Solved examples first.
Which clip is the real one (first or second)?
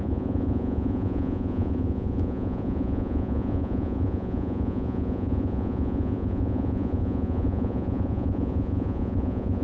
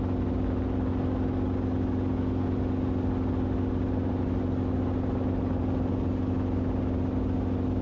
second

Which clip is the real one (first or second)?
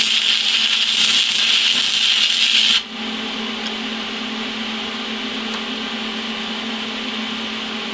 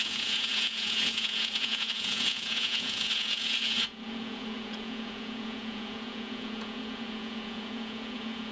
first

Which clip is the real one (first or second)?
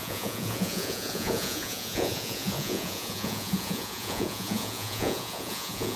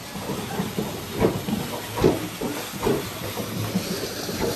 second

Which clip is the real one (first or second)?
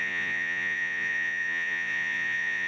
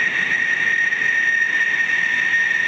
second